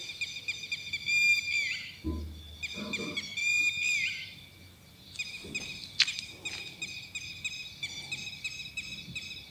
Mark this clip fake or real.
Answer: real